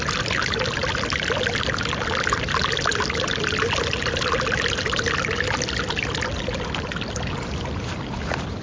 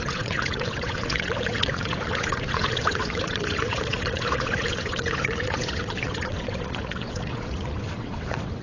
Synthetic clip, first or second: second